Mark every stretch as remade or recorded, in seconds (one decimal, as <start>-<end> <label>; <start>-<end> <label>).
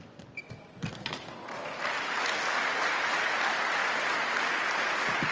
0.0-2.7 recorded; 2.7-3.4 remade; 3.4-5.3 recorded